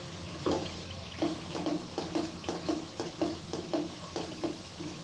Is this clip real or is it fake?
fake